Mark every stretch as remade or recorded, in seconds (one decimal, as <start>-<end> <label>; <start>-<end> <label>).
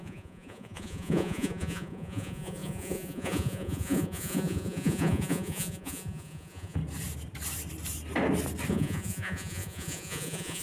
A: 0.0-6.8 remade; 6.8-8.7 recorded; 8.7-10.6 remade